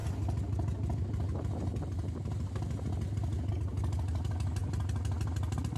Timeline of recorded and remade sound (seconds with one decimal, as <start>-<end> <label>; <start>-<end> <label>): 0.0-5.8 recorded